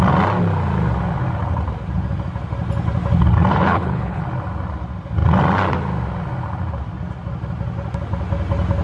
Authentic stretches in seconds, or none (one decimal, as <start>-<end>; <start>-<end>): 0.0-3.5; 4.2-8.8